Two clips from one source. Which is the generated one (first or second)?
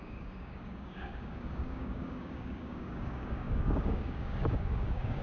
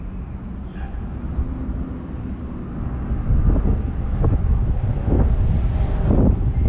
first